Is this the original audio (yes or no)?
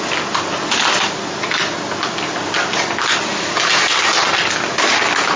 yes